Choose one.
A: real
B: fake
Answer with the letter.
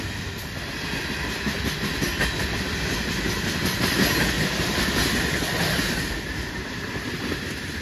A